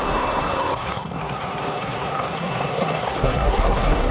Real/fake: fake